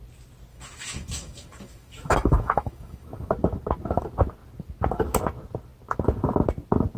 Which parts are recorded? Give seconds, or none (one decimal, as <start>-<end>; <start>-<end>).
0.0-0.5; 3.3-7.0